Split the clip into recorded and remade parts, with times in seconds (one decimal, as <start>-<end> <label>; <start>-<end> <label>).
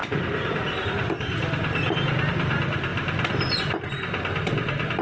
0.0-5.0 recorded